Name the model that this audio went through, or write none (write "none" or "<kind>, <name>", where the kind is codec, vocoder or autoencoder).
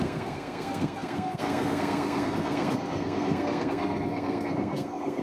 codec, SNAC